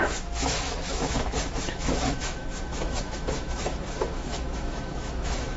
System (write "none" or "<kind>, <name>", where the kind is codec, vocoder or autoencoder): autoencoder, DAC-VAE